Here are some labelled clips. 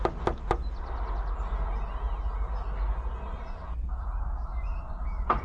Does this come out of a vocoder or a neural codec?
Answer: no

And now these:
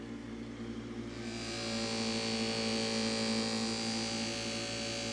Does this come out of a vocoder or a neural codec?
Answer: no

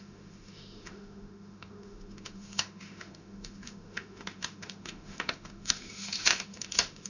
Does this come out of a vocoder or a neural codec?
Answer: yes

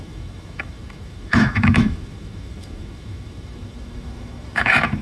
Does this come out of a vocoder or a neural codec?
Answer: yes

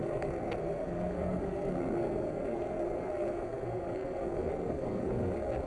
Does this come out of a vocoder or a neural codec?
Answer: yes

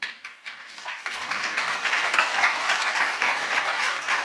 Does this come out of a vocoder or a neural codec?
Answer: yes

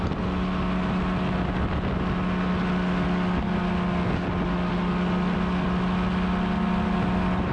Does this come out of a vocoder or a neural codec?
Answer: no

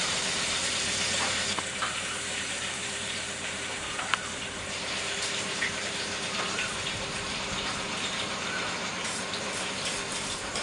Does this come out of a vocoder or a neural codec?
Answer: yes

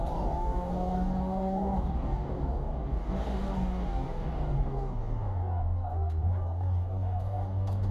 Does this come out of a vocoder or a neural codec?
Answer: yes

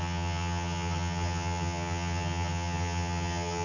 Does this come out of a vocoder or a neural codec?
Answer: yes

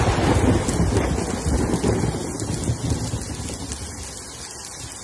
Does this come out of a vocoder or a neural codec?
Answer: no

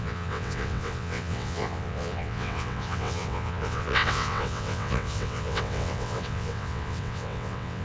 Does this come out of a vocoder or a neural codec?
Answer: yes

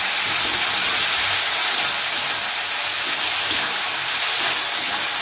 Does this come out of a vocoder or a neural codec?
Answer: no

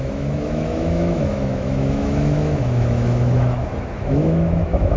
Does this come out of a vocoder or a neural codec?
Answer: yes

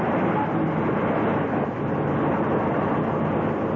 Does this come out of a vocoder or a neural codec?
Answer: no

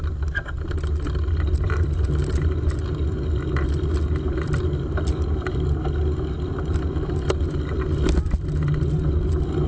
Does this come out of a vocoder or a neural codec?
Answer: no